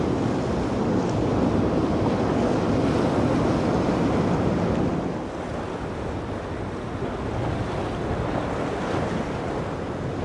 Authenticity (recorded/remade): recorded